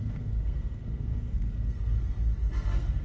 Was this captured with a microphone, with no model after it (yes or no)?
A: no